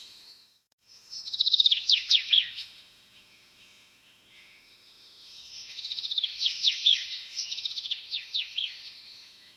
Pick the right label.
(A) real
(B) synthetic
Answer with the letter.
B